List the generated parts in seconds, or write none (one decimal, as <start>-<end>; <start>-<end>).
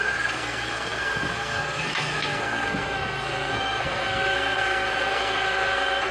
0.0-6.1